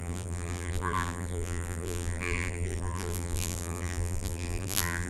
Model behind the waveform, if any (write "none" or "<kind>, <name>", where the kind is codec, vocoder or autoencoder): vocoder, BigVGAN v2